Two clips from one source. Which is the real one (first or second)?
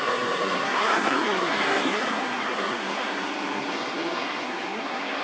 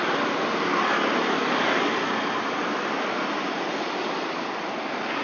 second